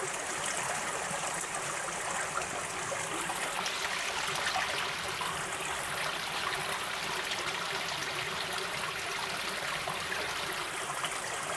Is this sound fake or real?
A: real